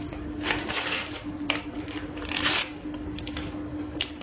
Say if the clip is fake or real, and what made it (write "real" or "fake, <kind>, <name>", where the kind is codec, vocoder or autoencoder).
real